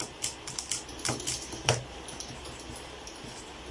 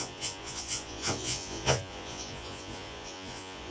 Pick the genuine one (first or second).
first